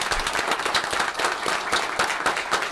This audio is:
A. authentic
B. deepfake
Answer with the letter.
A